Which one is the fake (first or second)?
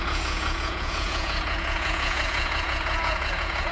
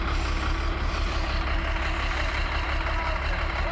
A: first